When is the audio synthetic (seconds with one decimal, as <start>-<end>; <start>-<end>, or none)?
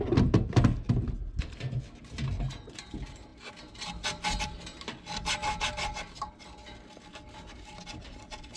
none